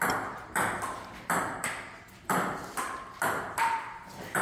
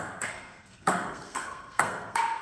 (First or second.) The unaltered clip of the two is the first